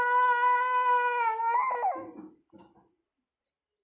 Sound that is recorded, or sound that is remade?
recorded